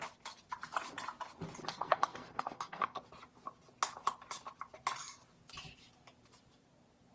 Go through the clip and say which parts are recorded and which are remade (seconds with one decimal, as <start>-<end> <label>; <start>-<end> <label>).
0.0-1.6 recorded; 1.6-3.0 remade; 3.0-7.1 recorded